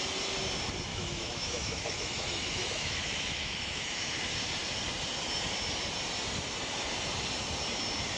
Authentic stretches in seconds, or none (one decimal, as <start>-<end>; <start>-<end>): 0.0-0.9; 4.1-8.2

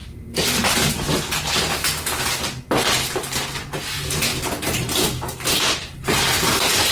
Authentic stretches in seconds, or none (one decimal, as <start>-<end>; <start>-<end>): 0.9-6.9

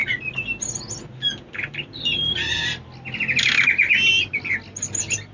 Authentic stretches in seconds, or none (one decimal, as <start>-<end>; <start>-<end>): 0.0-5.3